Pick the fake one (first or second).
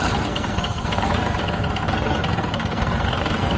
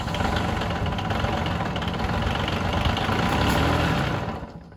first